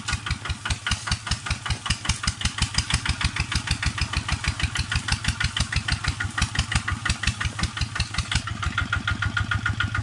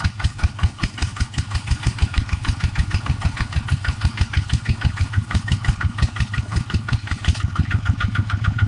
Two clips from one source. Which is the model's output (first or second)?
second